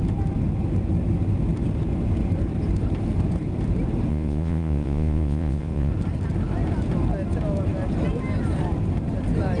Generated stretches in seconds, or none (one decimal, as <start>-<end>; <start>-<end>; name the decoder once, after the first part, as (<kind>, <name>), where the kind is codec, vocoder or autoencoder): 4.1-5.9 (vocoder, Vocos)